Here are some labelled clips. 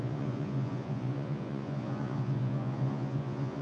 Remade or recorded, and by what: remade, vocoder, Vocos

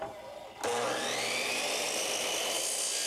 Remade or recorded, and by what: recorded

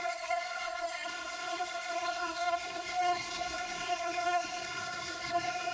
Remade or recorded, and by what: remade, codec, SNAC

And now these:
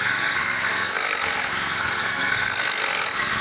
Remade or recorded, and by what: remade, codec, SNAC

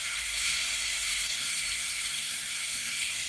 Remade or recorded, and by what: remade, codec, SNAC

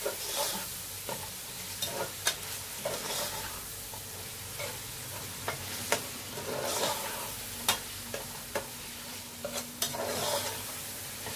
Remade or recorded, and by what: recorded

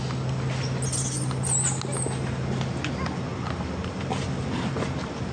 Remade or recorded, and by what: recorded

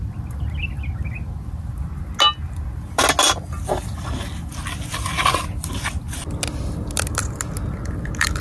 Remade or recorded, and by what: recorded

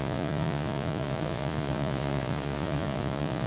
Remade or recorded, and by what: remade, vocoder, Vocos